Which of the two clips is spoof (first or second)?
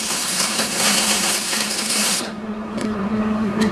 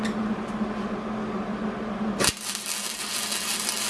first